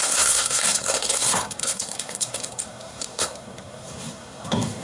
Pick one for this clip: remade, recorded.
remade